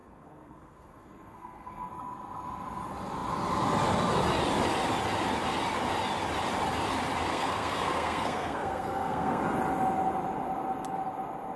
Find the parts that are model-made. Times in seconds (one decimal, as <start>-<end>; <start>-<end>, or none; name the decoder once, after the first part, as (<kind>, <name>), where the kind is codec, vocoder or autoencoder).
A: 0.0-1.9 (codec, SNAC); 7.3-9.4